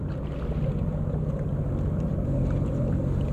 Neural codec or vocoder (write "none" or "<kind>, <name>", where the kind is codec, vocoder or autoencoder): none